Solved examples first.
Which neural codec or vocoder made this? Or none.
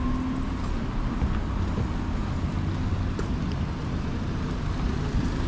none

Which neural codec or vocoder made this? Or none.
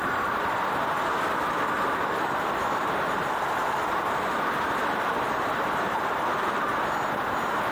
none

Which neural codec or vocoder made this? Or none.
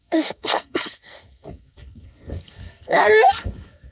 codec, SNAC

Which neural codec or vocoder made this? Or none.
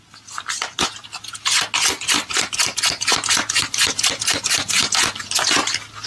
none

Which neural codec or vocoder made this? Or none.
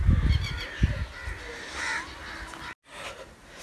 none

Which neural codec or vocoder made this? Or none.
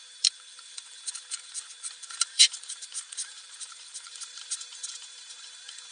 vocoder, BigVGAN v2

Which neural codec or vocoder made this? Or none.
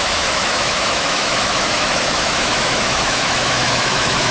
autoencoder, DAC-VAE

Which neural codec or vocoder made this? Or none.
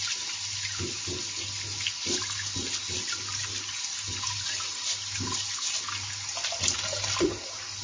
none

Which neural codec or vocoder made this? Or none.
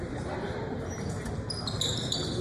vocoder, BigVGAN v2